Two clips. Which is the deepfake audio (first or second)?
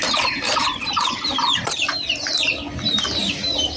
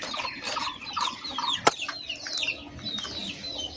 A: first